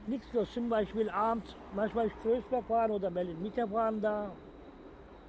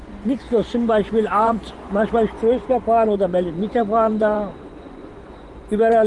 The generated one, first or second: second